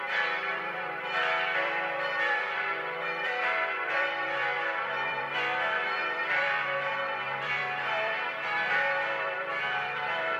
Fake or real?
fake